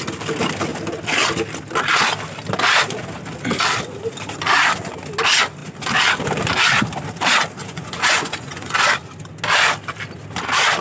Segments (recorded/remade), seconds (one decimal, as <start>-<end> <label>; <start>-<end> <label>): 0.0-7.6 recorded; 7.6-8.8 remade; 8.8-10.8 recorded